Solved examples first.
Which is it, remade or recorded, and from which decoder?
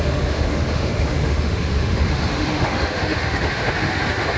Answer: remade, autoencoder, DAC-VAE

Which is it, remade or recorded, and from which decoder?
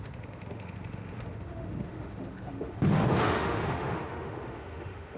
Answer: remade, autoencoder, DAC-VAE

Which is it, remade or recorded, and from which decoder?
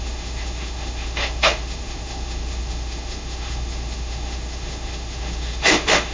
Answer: remade, autoencoder, DAC-VAE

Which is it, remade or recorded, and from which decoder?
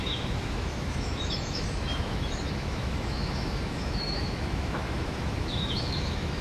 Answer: remade, autoencoder, DAC-VAE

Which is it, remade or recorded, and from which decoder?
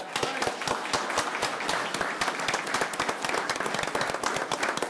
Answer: recorded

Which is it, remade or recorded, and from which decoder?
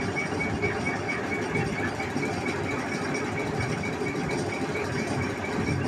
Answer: recorded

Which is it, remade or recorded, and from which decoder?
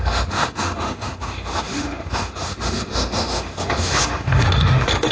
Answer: remade, autoencoder, DAC-VAE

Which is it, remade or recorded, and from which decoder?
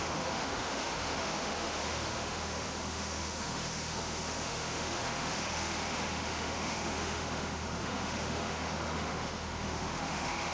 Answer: remade, autoencoder, DAC-VAE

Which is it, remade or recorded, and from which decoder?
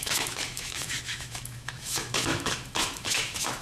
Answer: remade, autoencoder, DAC-VAE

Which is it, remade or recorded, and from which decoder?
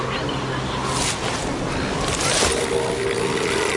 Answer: recorded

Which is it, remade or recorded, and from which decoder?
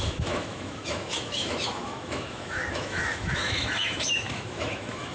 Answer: remade, autoencoder, DAC-VAE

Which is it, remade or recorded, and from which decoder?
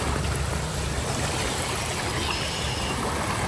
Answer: recorded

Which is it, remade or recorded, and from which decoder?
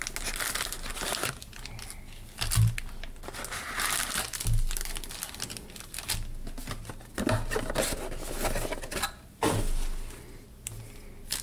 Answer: recorded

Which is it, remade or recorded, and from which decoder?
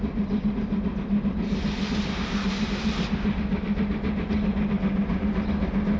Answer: recorded